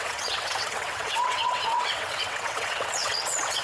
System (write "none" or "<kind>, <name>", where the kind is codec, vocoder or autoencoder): vocoder, WaveNeXt